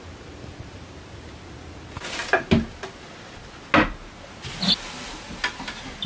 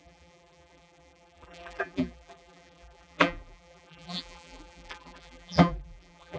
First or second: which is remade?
second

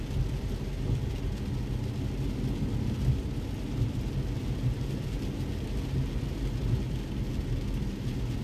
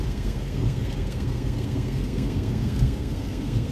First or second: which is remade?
second